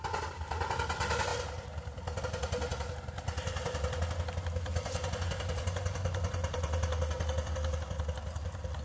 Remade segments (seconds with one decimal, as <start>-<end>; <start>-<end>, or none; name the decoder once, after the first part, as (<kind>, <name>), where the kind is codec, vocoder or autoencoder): none